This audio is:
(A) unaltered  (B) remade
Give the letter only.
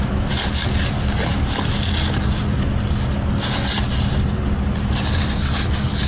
A